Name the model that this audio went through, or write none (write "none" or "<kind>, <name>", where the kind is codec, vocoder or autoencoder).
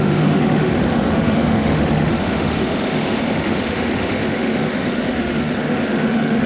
autoencoder, DAC-VAE